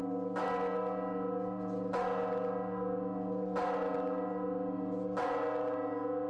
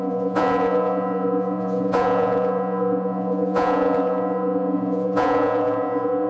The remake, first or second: second